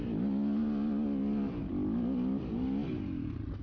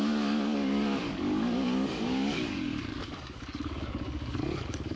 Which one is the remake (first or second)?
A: second